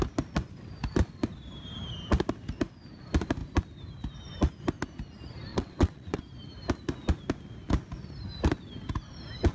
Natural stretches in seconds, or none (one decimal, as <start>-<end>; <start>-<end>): 0.0-5.5; 6.2-9.5